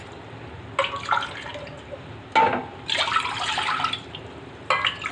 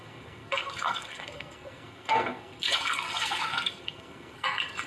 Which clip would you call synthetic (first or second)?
second